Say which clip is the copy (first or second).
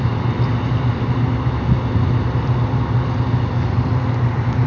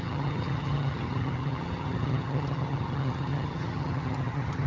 second